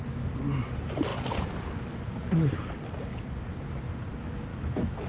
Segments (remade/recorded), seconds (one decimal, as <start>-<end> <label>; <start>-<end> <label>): 0.0-4.5 recorded; 4.5-5.1 remade